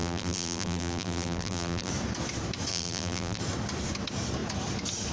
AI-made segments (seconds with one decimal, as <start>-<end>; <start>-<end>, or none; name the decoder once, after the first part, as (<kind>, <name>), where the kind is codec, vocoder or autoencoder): 0.0-1.9 (vocoder, BigVGAN v2); 2.7-3.4